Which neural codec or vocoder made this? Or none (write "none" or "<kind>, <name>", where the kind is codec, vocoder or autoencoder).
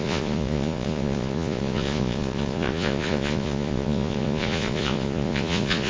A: vocoder, Vocos